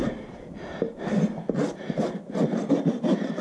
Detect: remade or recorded recorded